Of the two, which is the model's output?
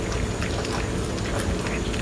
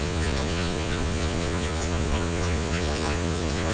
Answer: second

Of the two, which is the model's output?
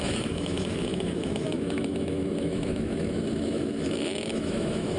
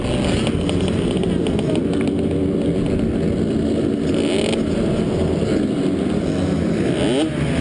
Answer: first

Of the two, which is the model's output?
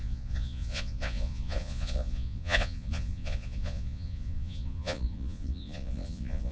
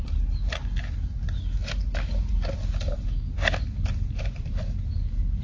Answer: first